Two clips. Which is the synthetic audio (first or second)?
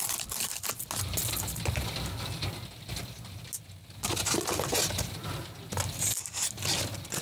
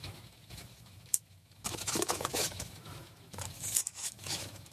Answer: second